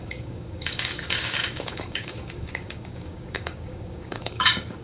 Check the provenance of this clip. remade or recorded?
remade